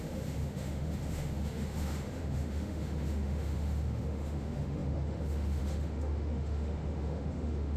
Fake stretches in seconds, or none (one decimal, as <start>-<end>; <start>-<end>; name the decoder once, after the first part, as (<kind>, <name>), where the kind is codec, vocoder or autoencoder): 0.0-7.8 (autoencoder, DAC-VAE)